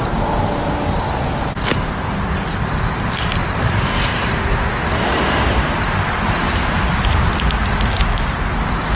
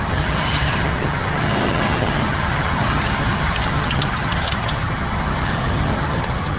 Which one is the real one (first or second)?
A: first